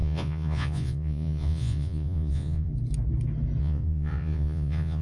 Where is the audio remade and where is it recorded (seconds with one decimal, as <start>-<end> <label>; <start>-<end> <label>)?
0.0-2.7 remade; 2.7-3.6 recorded; 3.6-5.0 remade